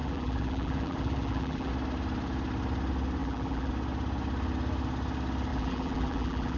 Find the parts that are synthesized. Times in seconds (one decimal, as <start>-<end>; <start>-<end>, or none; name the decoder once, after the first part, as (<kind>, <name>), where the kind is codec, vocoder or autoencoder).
0.0-1.7 (vocoder, BigVGAN v2); 3.2-3.7; 5.5-6.6